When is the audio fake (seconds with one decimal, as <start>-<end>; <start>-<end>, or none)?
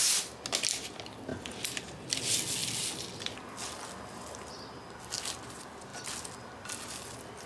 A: none